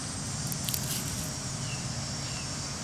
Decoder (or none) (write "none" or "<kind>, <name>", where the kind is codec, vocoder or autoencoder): none